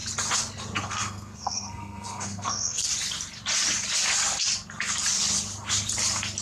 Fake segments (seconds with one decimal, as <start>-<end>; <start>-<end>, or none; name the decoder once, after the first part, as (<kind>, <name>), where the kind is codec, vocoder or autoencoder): 0.8-2.9 (codec, SNAC)